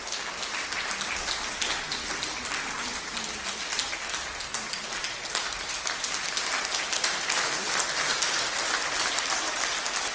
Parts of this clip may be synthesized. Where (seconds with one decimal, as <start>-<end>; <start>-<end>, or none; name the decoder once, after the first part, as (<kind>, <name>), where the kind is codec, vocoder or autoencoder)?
2.9-3.9 (vocoder, BigVGAN v2); 4.5-6.8